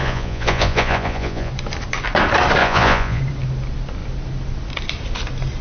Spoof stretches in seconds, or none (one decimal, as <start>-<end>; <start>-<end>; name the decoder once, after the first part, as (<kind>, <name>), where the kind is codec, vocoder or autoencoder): 0.0-1.5 (vocoder, Vocos); 2.6-3.2

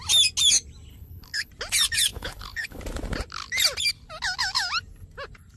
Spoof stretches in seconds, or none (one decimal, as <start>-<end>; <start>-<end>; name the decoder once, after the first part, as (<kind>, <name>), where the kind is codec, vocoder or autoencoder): 0.9-1.5 (codec, HILCodec); 2.1-2.8

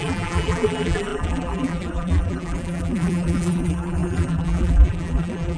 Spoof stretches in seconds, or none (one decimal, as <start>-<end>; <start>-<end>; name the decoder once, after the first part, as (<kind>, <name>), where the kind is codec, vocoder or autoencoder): 0.0-5.6 (vocoder, BigVGAN v2)

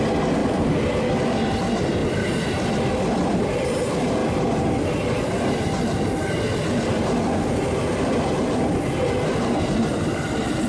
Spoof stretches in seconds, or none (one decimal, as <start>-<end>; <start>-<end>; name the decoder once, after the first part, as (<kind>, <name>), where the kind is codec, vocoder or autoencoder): none

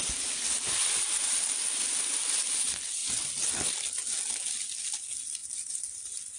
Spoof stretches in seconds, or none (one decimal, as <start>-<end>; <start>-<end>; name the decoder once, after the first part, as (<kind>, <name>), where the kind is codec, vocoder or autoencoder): 5.4-6.0 (vocoder, BigVGAN v2)

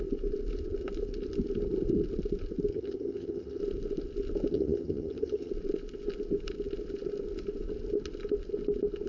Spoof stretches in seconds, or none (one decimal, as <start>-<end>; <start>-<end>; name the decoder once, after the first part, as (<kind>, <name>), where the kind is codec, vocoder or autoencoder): 2.7-3.6 (vocoder, HiFi-GAN); 4.5-5.5

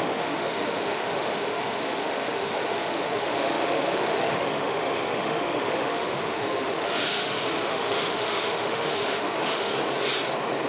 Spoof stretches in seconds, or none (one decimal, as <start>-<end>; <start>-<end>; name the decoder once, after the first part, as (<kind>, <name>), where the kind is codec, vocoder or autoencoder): 0.0-9.7 (autoencoder, DAC-VAE)